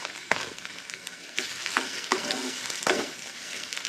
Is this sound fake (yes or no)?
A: yes